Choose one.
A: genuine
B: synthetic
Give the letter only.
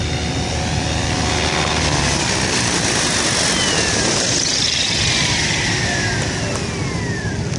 A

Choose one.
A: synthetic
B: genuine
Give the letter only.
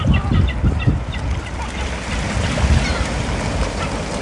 B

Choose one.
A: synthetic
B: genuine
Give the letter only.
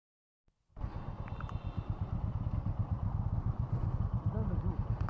B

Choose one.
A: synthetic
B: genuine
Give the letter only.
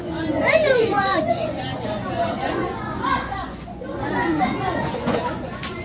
A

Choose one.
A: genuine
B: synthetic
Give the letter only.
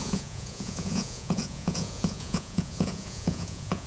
B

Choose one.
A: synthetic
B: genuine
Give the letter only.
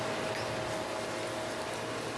B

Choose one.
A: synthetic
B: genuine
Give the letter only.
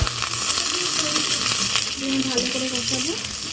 B